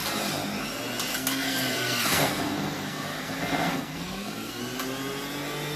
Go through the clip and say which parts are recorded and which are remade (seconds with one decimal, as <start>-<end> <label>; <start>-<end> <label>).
0.0-1.1 recorded; 1.1-4.6 remade; 4.6-5.8 recorded